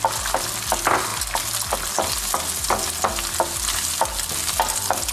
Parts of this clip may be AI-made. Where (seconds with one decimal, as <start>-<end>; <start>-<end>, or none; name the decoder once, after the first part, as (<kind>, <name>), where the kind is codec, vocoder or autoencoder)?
none